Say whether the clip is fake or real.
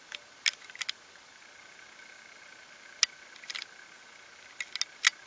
real